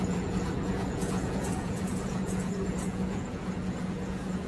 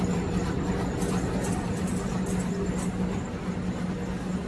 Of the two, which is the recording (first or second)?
second